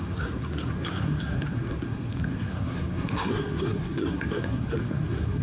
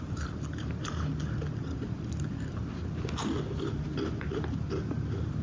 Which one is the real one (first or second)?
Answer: second